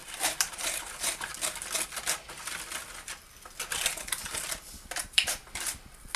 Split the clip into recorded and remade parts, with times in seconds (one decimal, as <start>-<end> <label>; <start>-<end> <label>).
0.0-1.3 remade; 1.3-5.0 recorded; 5.0-5.4 remade; 5.4-6.2 recorded